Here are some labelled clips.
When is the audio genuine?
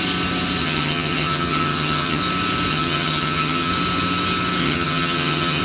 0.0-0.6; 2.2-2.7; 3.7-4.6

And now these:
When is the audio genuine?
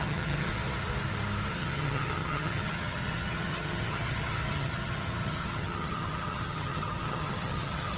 0.5-1.5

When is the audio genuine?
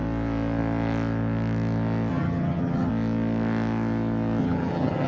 0.0-2.1; 2.9-4.4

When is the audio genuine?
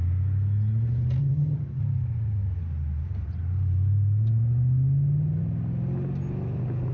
0.0-1.2; 1.8-6.9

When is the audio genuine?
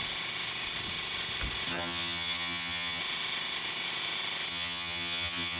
0.0-1.7; 3.0-4.5